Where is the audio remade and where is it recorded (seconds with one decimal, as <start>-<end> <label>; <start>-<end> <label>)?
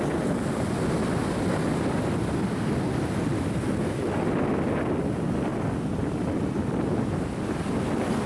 0.0-8.3 recorded